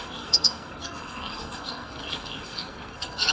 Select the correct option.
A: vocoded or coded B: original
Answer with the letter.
A